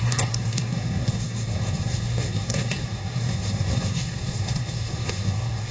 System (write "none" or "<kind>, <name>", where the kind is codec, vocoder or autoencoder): codec, SNAC